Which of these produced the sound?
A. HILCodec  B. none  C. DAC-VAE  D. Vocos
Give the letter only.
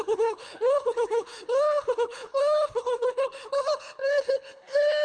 A